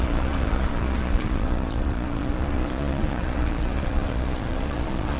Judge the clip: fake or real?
fake